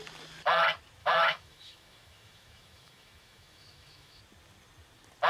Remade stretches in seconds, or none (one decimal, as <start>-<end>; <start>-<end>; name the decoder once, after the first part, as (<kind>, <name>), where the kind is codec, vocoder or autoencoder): 1.0-4.2 (autoencoder, DAC-VAE)